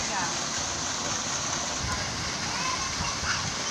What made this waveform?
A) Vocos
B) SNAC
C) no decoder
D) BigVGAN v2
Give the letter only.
C